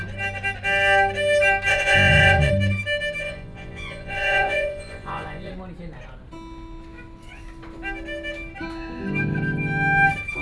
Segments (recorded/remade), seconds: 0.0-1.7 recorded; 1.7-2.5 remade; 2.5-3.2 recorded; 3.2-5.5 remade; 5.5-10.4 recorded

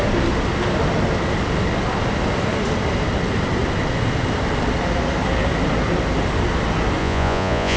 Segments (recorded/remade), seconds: 0.0-7.0 recorded; 7.0-7.8 remade

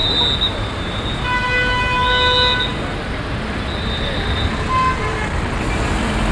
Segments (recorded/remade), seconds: 0.0-6.3 recorded

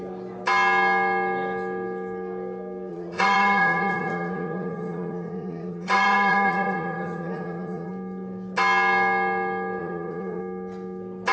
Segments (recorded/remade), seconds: 0.0-2.9 recorded; 2.9-7.9 remade; 7.9-9.8 recorded; 9.8-10.4 remade; 10.4-11.3 recorded

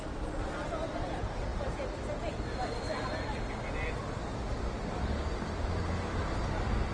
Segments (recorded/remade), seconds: 0.0-6.9 recorded